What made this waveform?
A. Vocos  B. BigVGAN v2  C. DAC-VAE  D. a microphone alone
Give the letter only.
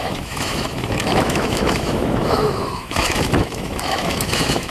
C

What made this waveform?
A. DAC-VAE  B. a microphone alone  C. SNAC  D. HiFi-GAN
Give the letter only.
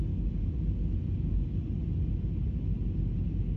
B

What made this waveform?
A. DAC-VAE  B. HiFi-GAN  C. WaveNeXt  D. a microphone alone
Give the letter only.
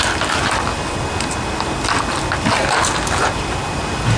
D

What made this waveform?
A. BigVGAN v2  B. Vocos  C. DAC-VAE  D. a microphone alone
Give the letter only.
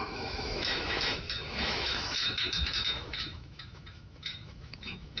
C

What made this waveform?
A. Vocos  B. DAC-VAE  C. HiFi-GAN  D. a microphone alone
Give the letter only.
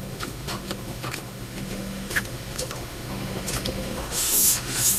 B